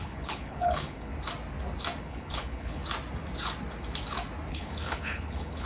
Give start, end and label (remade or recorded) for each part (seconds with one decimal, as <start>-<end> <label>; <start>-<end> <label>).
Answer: 0.0-1.1 remade; 1.1-2.0 recorded; 2.0-2.8 remade; 2.8-4.5 recorded; 4.5-5.7 remade